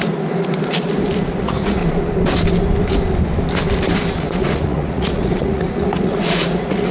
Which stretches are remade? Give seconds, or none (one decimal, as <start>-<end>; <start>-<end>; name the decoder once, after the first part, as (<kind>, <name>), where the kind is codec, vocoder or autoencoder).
1.4-1.8 (vocoder, Vocos); 4.2-6.9